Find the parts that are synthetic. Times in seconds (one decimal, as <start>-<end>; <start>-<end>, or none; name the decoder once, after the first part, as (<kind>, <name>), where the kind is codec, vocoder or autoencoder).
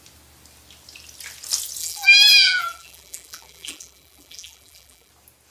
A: 1.8-5.1 (vocoder, BigVGAN v2)